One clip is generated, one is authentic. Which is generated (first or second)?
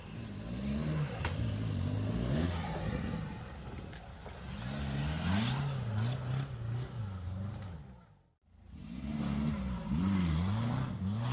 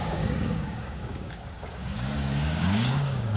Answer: second